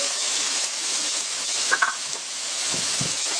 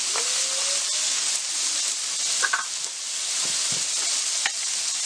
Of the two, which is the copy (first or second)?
first